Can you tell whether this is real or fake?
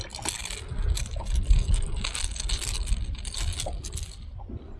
real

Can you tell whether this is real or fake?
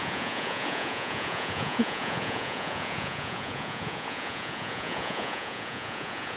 fake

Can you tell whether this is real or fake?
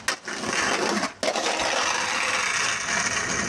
real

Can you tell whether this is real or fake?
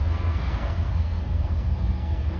fake